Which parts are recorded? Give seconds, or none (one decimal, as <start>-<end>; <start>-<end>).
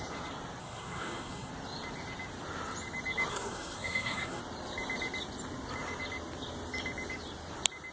0.0-0.6; 1.5-3.3; 4.4-7.9